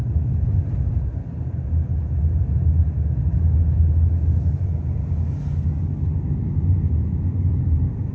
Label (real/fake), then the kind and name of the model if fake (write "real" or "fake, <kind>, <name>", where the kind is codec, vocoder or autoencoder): real